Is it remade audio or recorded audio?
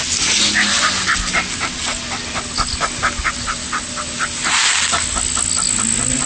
recorded